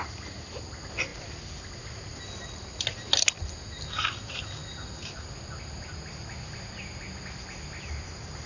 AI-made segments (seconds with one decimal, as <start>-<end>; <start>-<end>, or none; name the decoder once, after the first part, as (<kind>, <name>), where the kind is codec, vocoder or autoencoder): none